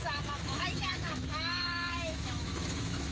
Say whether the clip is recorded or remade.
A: remade